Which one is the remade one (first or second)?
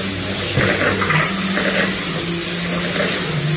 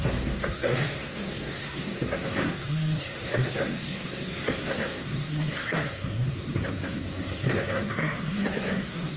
second